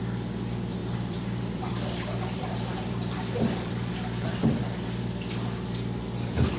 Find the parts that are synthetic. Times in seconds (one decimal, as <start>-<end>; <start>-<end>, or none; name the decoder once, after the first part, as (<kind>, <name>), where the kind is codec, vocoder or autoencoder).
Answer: 0.8-3.9 (vocoder, BigVGAN v2)